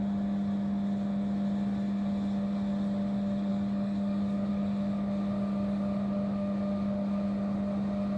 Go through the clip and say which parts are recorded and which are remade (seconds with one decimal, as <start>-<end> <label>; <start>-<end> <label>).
0.0-3.5 recorded; 3.5-4.5 remade; 4.5-8.2 recorded